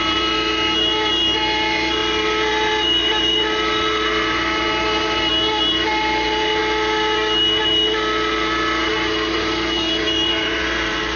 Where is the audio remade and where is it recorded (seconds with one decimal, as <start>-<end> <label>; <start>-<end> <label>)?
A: 0.0-6.6 remade; 6.6-9.3 recorded; 9.3-11.2 remade